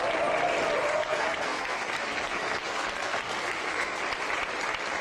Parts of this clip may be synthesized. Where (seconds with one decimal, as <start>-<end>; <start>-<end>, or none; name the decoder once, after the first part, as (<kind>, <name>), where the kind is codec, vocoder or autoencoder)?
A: 1.0-4.0 (codec, SNAC)